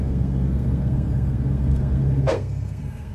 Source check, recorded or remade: remade